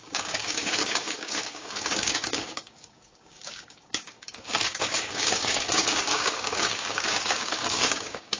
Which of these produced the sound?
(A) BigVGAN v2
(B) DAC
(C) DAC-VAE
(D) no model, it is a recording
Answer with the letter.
B